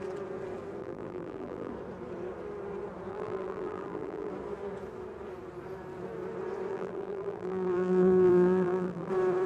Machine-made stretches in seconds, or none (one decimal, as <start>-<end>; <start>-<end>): 0.8-1.7; 3.1-4.3; 6.7-9.1